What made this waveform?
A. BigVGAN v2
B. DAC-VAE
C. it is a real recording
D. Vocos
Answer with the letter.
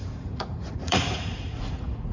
D